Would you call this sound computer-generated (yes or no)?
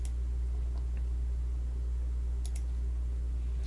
no